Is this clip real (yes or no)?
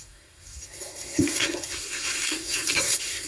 no